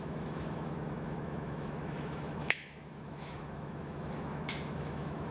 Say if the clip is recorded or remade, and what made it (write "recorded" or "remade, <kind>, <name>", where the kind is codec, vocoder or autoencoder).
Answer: remade, autoencoder, DAC-VAE